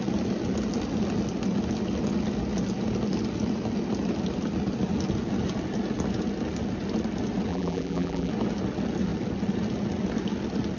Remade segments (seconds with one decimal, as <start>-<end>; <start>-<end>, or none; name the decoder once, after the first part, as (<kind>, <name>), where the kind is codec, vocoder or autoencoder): 7.5-8.3 (vocoder, BigVGAN v2)